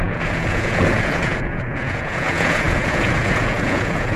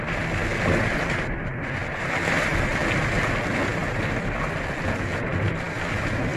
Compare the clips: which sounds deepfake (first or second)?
first